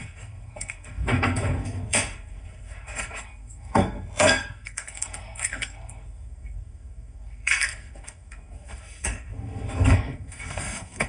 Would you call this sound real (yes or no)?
no